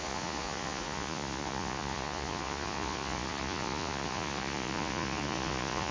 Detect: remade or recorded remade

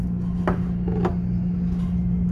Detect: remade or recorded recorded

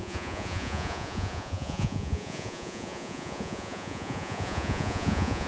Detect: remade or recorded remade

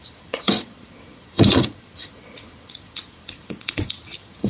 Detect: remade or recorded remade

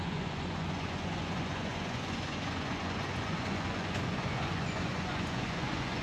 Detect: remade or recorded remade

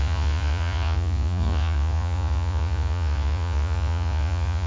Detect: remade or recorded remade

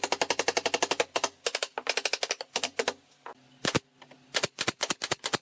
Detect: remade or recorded recorded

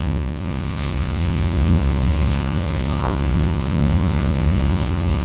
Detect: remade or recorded remade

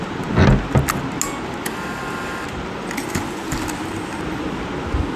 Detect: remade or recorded recorded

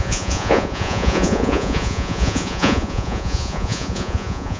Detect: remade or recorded remade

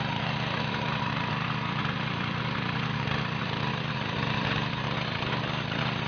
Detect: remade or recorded recorded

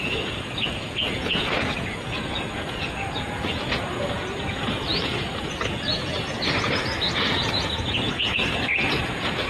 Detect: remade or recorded remade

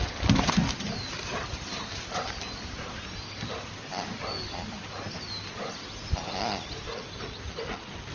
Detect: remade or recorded recorded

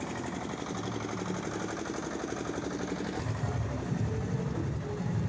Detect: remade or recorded recorded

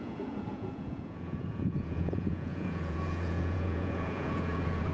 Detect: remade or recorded remade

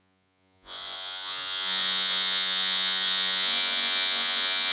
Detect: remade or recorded remade